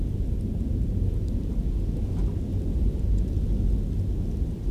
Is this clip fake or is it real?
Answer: real